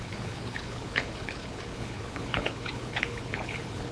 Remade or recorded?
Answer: remade